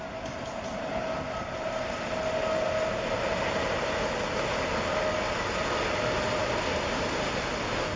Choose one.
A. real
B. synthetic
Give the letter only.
A